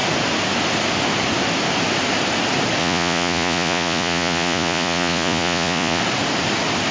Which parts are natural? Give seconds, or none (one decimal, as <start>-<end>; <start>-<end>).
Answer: 0.0-2.8; 6.0-6.9